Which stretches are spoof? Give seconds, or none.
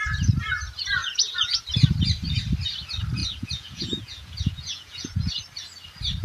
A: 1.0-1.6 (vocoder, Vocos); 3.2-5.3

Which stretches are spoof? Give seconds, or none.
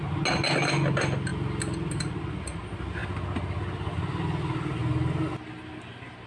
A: none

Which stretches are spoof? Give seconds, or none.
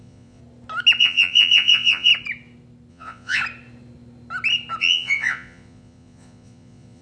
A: 0.0-0.4 (vocoder, Vocos); 1.0-2.1; 2.9-3.4; 4.8-7.0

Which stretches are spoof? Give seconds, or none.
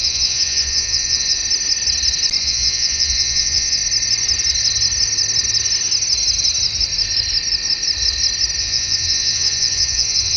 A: 0.0-1.4 (vocoder, Vocos); 2.4-3.8; 8.6-10.4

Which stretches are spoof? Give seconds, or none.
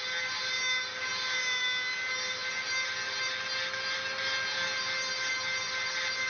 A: none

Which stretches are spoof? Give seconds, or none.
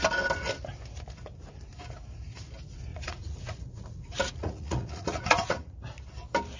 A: 2.9-5.8 (vocoder, Vocos)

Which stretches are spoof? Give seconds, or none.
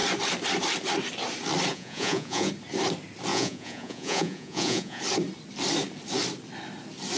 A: 1.7-2.5 (vocoder, Vocos); 3.3-5.0